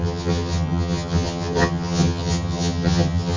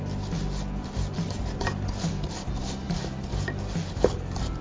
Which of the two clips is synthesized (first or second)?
first